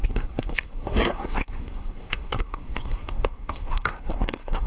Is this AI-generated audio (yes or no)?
yes